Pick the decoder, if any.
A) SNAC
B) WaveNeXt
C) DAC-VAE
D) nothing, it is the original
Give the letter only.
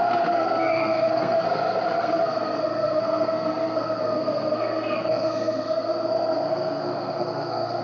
A